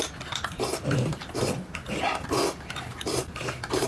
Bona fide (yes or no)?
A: yes